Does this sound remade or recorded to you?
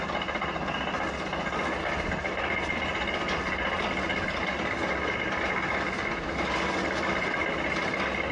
recorded